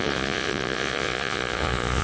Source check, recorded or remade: remade